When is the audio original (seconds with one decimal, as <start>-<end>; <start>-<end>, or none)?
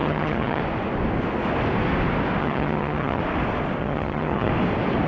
0.6-2.4; 3.2-3.8; 4.5-5.1